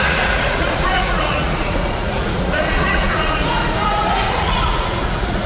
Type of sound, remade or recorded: remade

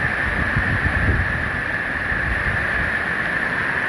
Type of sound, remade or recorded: recorded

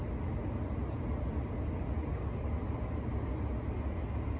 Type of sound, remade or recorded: recorded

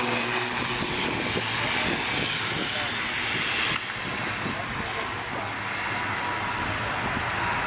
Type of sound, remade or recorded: recorded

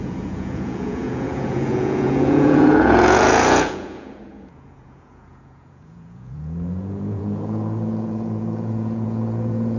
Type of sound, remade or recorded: remade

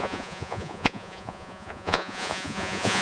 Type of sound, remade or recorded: remade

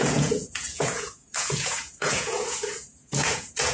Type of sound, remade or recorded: remade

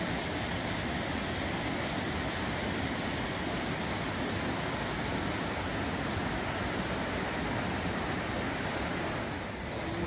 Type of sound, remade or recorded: recorded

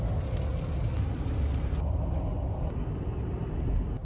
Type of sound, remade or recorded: recorded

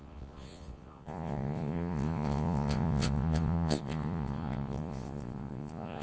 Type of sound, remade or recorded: remade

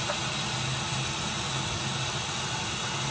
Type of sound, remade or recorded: recorded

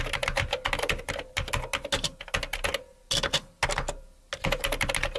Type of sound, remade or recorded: recorded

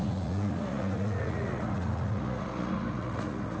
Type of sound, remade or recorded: remade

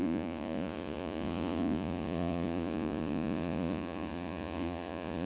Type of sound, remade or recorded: remade